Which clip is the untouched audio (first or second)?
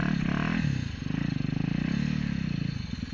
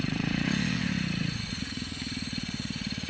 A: first